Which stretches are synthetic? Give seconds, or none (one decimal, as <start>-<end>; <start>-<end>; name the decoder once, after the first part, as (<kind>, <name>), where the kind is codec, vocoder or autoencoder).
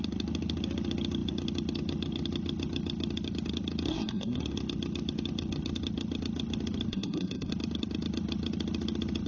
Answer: 3.9-4.4 (codec, SNAC); 6.9-7.5